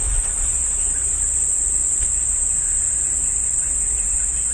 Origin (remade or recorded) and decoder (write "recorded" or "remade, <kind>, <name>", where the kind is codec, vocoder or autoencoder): recorded